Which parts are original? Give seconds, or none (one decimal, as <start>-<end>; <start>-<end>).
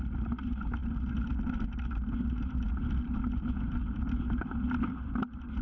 0.0-5.6